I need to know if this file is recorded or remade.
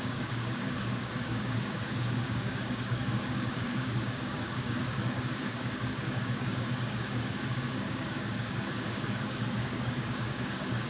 remade